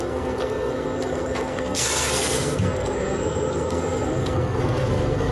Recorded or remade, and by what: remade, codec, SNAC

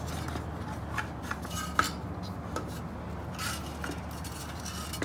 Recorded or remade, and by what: recorded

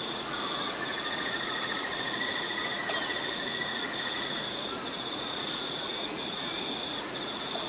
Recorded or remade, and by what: remade, vocoder, Vocos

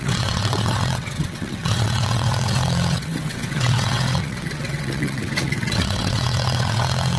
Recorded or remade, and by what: remade, vocoder, WaveNeXt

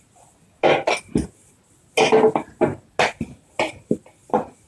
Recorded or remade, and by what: recorded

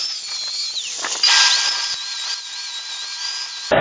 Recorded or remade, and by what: recorded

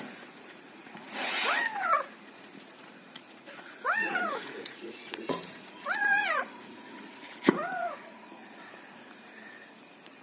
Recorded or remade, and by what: remade, vocoder, Vocos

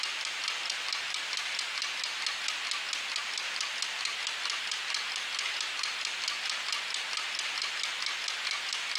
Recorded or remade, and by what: recorded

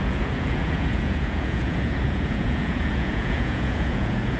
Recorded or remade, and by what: remade, vocoder, Vocos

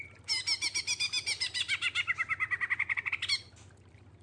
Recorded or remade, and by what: recorded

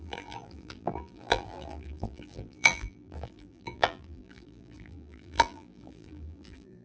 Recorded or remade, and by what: remade, vocoder, BigVGAN v2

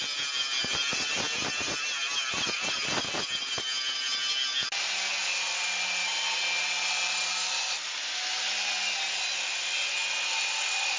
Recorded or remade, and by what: recorded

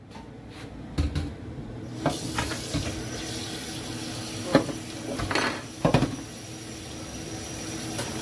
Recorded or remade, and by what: recorded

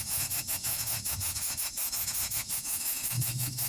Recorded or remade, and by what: remade, autoencoder, DAC-VAE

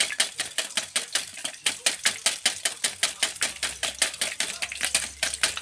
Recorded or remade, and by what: recorded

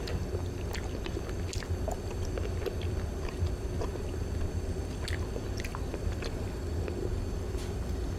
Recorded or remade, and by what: recorded